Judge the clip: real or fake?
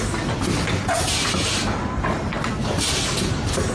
real